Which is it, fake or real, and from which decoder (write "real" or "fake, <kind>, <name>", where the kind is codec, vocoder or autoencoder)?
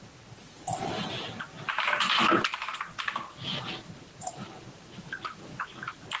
real